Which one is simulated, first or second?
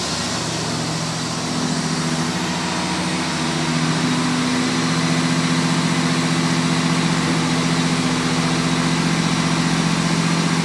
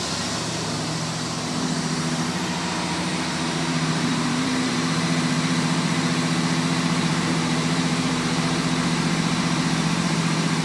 second